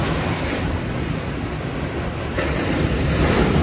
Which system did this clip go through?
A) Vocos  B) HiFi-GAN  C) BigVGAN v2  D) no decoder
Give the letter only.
D